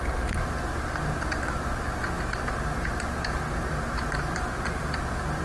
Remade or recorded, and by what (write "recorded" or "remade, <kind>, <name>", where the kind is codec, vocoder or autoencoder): recorded